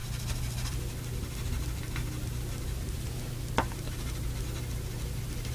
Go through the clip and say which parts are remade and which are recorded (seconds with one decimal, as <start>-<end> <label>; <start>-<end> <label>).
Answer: 0.0-5.5 recorded